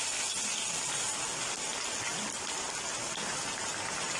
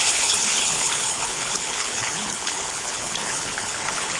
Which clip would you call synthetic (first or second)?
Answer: second